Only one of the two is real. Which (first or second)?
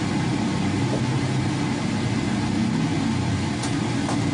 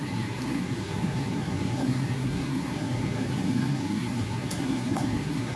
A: first